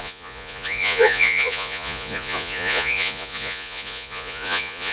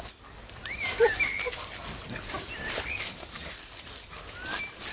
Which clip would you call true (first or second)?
second